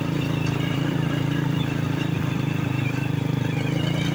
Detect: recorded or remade remade